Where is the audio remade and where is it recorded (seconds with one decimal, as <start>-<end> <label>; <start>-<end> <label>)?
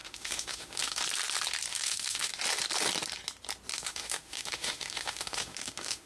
0.0-1.0 remade; 1.0-1.7 recorded; 1.7-2.3 remade; 2.3-3.7 recorded; 3.7-6.1 remade